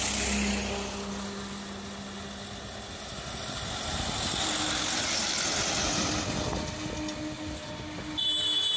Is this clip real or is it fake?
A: real